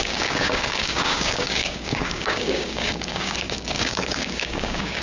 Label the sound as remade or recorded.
remade